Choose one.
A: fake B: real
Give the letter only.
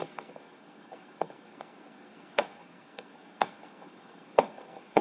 A